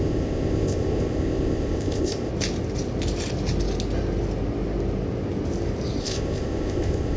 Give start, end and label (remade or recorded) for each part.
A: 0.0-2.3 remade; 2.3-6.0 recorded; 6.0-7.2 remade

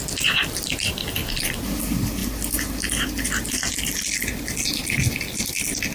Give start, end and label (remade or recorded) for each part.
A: 0.0-5.9 recorded

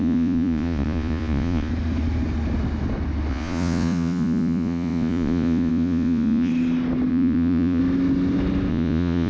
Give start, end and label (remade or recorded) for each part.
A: 0.0-1.7 remade; 1.7-3.3 recorded; 3.3-6.5 remade; 6.5-7.1 recorded; 7.1-7.8 remade; 7.8-8.7 recorded; 8.7-9.3 remade

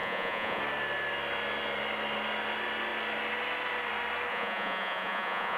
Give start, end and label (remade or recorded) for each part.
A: 0.0-0.6 remade; 0.6-4.3 recorded; 4.3-5.6 remade

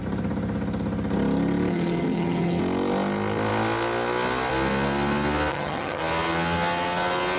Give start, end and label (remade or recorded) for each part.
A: 0.0-1.7 recorded; 1.7-2.6 remade; 2.6-5.5 recorded; 5.5-6.0 remade; 6.0-7.4 recorded

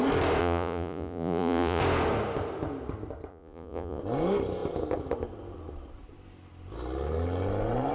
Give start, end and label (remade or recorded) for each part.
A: 0.0-0.4 recorded; 0.4-1.8 remade; 1.8-3.3 recorded; 3.3-4.0 remade; 4.0-7.9 recorded

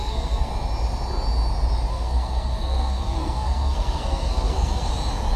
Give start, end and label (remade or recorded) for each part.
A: 0.0-0.5 remade; 0.5-1.9 recorded; 1.9-4.9 remade; 4.9-5.4 recorded